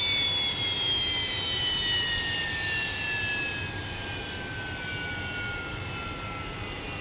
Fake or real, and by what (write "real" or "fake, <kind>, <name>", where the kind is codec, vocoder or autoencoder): real